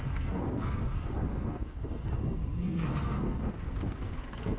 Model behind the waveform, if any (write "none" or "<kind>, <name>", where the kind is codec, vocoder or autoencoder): codec, SNAC